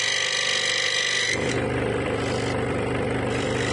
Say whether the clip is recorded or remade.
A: remade